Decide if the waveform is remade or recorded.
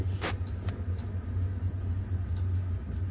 recorded